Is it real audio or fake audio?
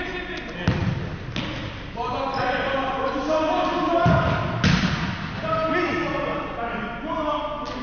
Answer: real